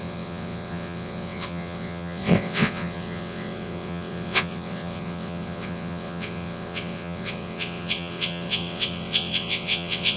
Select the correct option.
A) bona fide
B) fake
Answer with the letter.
B